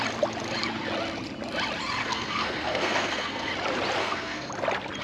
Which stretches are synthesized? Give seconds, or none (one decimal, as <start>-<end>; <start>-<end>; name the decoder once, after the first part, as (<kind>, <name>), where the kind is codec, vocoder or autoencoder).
2.0-3.5 (codec, SNAC); 4.0-4.5